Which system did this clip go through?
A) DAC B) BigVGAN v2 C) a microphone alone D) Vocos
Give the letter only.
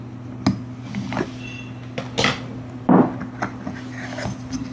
C